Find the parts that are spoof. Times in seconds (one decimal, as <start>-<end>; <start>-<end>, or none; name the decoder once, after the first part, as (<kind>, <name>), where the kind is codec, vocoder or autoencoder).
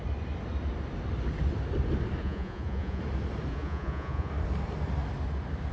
2.2-3.0 (vocoder, Vocos); 3.5-4.3